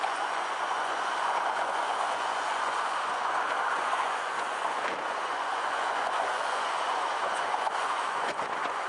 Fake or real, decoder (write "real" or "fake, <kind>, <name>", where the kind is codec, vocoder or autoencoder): fake, vocoder, Vocos